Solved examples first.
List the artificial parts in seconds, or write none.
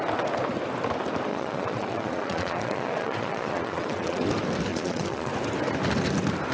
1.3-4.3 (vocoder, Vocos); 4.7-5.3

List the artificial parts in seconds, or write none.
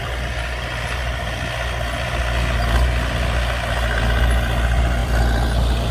5.0-5.9 (vocoder, BigVGAN v2)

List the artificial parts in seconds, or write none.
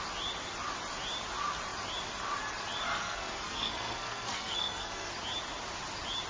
2.9-5.1 (codec, SNAC)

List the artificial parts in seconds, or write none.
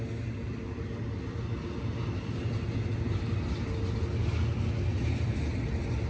none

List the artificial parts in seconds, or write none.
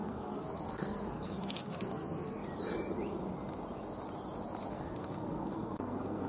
0.0-2.4 (codec, SNAC); 4.7-6.3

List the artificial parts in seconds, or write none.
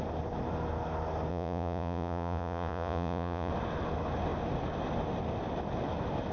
1.3-3.5 (vocoder, Vocos)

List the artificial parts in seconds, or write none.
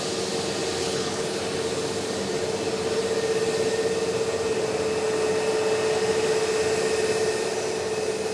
0.8-1.4 (codec, HILCodec)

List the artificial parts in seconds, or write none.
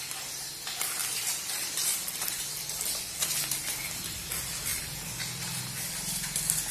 1.0-3.4 (vocoder, BigVGAN v2); 4.7-5.6